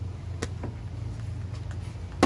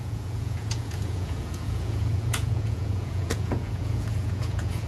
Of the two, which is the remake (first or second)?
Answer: second